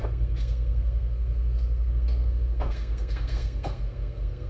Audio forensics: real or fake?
fake